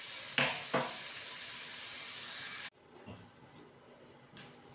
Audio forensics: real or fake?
real